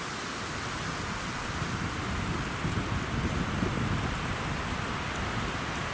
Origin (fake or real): real